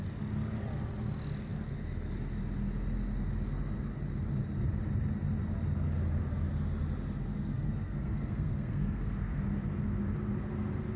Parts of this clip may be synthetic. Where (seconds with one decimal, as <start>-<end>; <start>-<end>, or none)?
7.3-9.4